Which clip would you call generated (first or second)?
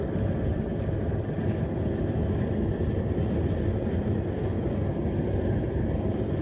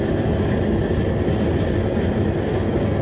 first